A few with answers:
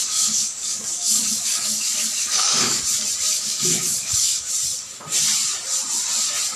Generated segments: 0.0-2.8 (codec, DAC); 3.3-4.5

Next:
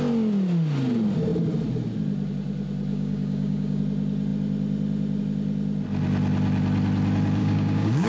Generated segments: 2.9-3.8 (codec, DAC); 7.4-8.1

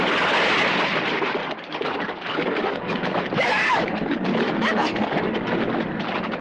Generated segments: 1.4-5.2 (codec, DAC)

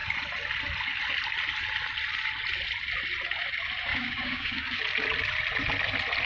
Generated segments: 3.9-4.8 (codec, DAC)

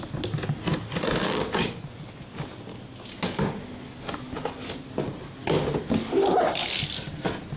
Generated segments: 0.7-1.8 (codec, DAC)

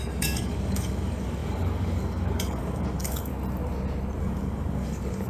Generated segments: 0.0-3.3 (codec, DAC); 4.2-5.3